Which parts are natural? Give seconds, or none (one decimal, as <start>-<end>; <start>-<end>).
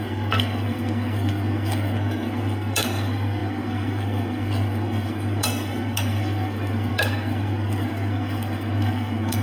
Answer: none